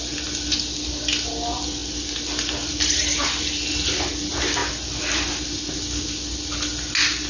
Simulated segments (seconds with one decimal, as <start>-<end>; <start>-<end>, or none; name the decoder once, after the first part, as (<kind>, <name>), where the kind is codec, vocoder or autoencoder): none